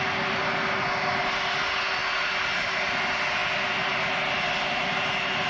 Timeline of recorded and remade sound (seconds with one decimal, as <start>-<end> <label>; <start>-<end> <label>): 0.0-5.5 recorded